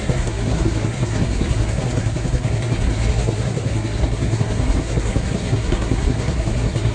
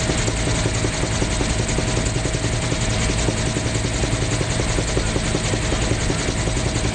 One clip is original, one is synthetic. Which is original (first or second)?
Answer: second